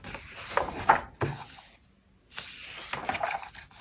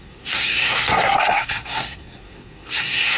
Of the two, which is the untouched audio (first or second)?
first